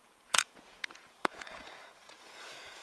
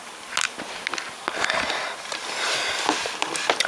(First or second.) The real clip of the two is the second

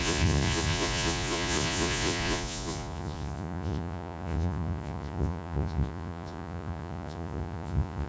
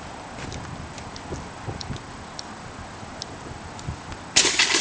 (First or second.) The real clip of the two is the second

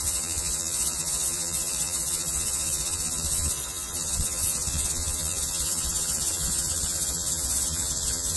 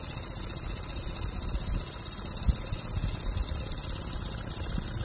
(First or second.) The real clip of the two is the second